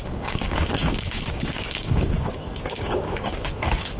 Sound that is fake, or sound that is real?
fake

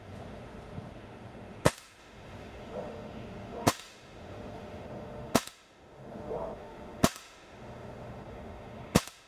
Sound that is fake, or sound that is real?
fake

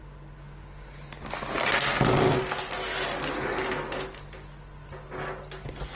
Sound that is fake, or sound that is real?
real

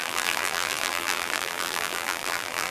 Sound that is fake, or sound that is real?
fake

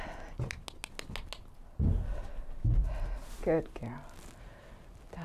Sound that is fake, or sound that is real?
real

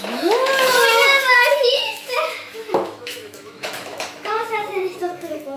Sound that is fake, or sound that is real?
fake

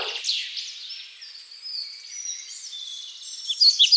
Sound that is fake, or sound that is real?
real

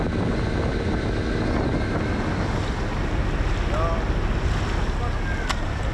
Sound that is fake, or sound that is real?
real